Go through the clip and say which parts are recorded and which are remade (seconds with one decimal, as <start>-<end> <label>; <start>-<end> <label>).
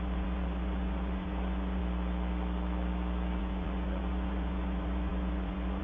0.0-1.8 remade; 1.8-3.4 recorded; 3.4-5.8 remade